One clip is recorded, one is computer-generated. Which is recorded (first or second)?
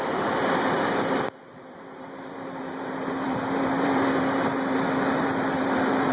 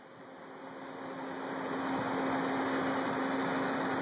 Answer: second